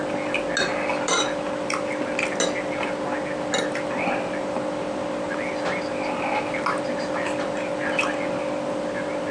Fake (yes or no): no